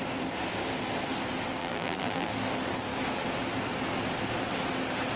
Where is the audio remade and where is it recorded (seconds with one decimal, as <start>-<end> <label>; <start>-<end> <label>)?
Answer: 0.0-1.6 recorded; 1.6-2.3 remade; 2.3-5.2 recorded